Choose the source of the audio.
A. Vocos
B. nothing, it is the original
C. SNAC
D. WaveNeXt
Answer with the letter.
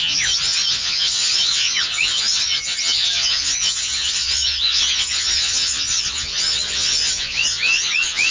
A